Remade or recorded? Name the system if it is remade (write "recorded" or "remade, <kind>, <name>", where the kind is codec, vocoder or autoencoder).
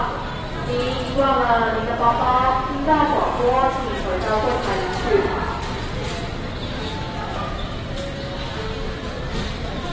recorded